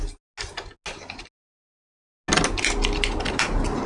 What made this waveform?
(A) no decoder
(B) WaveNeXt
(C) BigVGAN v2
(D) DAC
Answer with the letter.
A